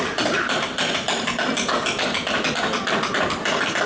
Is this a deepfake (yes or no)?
no